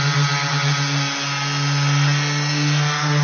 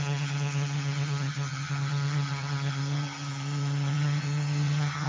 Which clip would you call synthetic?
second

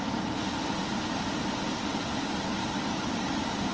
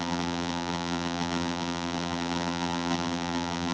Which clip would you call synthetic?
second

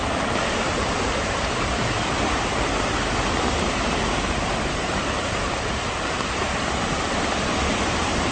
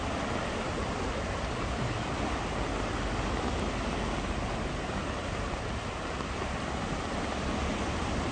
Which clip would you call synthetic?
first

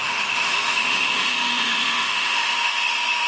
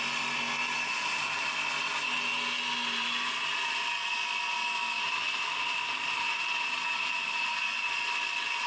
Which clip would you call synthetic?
first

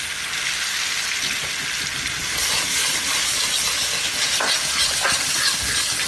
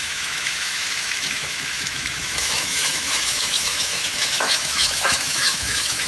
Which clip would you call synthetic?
second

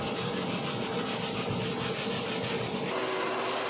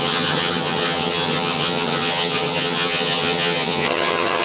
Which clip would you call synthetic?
second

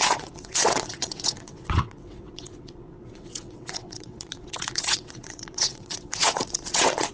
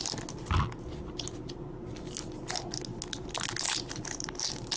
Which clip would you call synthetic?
first